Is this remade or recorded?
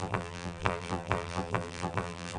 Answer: remade